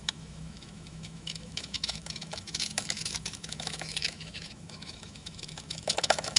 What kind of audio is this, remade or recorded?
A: remade